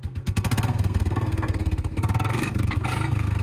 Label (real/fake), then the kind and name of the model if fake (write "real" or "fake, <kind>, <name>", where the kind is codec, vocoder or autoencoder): fake, codec, SNAC